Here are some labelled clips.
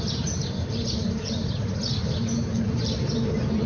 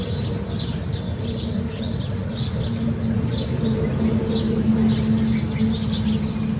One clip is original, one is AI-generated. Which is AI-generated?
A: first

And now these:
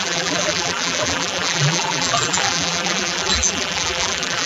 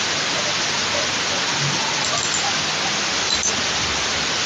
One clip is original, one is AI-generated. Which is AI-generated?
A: first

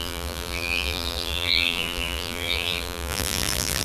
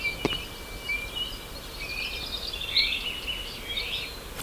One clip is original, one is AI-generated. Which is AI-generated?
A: first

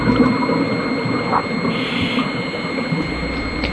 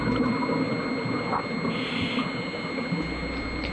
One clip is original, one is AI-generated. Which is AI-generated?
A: first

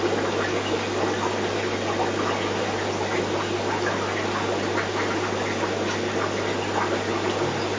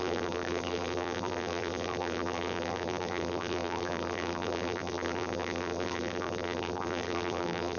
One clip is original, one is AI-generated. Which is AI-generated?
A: second